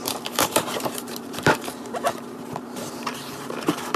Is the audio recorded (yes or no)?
no